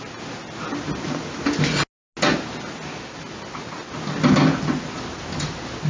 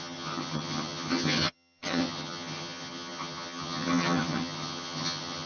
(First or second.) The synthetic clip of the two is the second